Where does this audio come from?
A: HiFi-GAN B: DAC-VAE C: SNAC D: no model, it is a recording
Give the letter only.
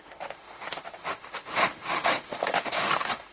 B